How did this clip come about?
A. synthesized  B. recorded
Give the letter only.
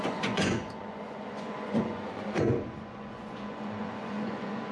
A